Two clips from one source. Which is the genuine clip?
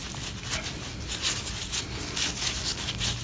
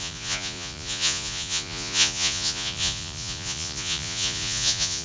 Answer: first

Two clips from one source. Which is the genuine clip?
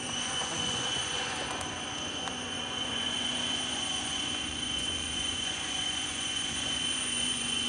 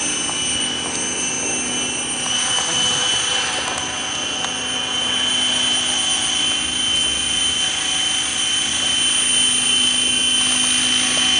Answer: second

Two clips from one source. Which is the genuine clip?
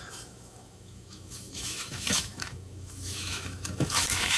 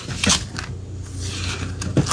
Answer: second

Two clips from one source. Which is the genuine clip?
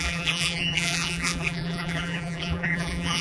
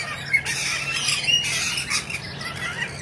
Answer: second